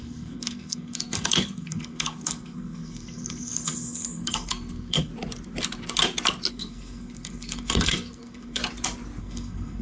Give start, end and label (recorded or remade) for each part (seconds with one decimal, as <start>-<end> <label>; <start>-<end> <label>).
0.0-5.1 remade; 5.1-6.5 recorded; 6.5-8.6 remade; 8.6-9.2 recorded; 9.2-9.8 remade